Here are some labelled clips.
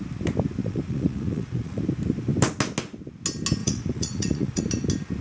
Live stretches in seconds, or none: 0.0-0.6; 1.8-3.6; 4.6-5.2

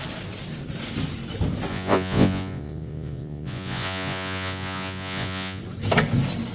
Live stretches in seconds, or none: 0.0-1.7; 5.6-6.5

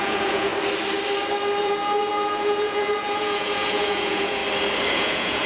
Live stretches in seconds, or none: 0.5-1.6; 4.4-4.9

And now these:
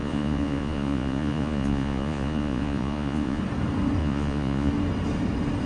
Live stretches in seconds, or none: 3.4-4.0; 4.7-5.7